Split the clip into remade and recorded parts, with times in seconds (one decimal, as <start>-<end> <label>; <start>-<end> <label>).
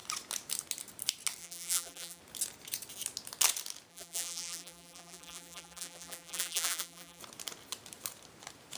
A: 0.0-1.4 recorded; 1.4-2.2 remade; 2.2-3.9 recorded; 3.9-7.2 remade; 7.2-8.8 recorded